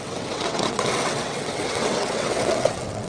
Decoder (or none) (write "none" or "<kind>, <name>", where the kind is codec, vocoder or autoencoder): vocoder, WaveNeXt